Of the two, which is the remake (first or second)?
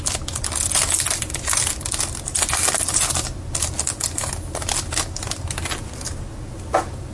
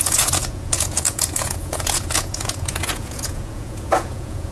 second